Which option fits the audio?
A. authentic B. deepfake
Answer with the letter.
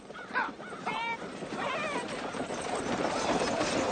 B